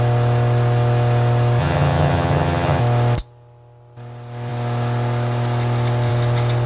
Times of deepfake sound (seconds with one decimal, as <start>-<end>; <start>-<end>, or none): 1.6-2.8